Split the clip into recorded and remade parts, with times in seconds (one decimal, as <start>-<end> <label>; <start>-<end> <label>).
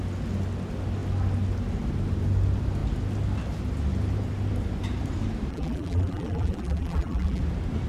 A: 0.0-5.5 recorded; 5.5-7.4 remade; 7.4-7.9 recorded